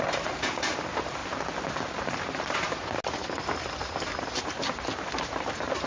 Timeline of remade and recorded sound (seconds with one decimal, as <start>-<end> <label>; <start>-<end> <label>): 0.0-1.2 remade; 1.2-2.0 recorded; 2.0-2.8 remade; 2.8-3.8 recorded; 3.8-5.9 remade